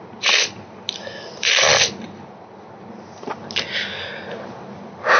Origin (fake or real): real